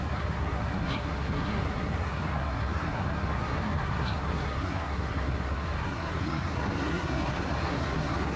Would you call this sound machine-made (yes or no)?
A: yes